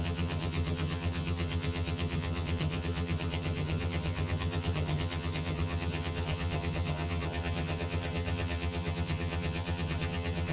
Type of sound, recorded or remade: remade